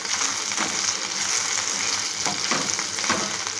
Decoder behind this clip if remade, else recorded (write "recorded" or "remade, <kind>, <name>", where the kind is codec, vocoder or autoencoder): recorded